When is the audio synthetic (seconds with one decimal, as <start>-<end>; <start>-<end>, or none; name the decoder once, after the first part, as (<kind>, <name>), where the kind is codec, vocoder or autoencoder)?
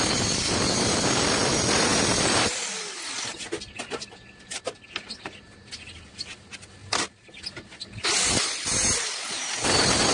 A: none